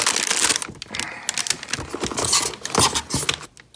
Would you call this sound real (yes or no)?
yes